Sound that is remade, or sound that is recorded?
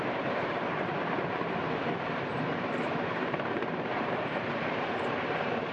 remade